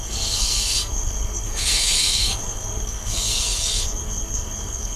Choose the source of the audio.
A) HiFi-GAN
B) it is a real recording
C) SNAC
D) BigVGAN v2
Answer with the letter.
C